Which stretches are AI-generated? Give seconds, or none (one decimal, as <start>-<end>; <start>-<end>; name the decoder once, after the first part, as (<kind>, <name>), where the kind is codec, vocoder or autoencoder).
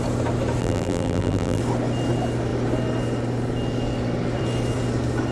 0.6-1.6 (vocoder, BigVGAN v2)